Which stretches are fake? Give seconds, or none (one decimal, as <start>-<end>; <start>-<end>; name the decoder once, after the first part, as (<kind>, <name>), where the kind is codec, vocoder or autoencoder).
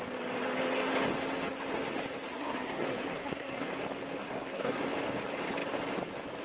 2.3-3.7 (codec, SNAC); 4.2-4.8